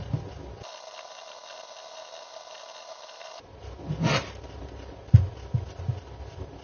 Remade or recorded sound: recorded